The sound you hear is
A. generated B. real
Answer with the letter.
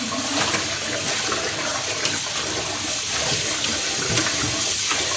B